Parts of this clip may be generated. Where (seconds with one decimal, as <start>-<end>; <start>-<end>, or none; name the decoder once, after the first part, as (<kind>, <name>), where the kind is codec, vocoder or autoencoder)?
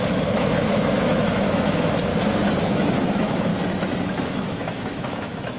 0.0-2.1 (autoencoder, DAC-VAE); 2.7-3.5; 4.0-5.6